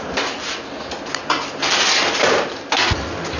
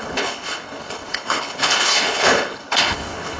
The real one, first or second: first